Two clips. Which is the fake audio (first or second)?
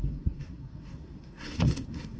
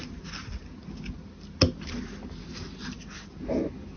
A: first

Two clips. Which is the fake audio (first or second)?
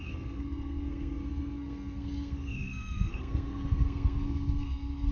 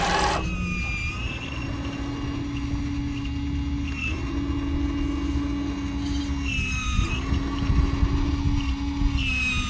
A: first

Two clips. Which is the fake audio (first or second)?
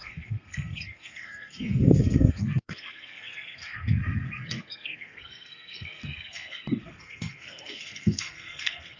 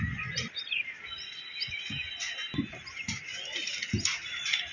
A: first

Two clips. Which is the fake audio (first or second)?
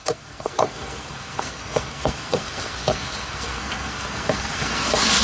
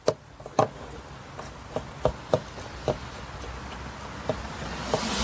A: first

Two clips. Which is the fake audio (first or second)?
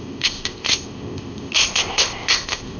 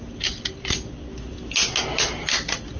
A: first